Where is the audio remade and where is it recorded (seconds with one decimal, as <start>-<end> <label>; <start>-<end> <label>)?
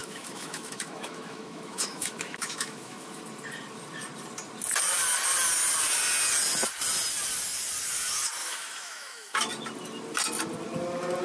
0.0-3.2 remade; 3.2-8.4 recorded; 8.4-9.5 remade; 9.5-11.2 recorded